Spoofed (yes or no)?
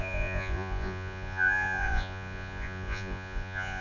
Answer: yes